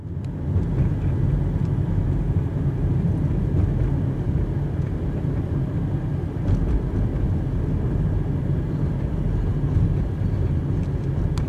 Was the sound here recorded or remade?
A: recorded